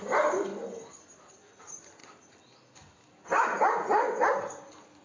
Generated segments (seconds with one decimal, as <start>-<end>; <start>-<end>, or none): none